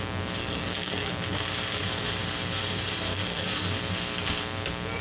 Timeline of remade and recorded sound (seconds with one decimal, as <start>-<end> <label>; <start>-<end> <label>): 0.0-0.4 recorded; 0.4-1.1 remade; 1.1-3.1 recorded; 3.1-3.7 remade; 3.7-5.0 recorded